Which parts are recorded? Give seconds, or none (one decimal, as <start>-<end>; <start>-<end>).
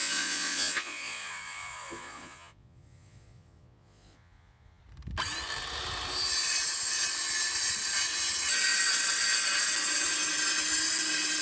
4.8-11.4